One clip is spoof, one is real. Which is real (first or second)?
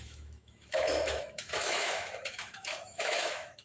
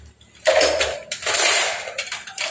second